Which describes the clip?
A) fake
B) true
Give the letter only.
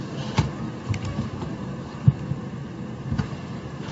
A